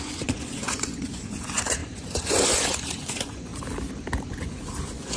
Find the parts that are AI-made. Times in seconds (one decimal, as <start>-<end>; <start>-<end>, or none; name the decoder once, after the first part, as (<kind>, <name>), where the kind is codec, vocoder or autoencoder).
0.0-3.5 (vocoder, Vocos); 4.3-5.2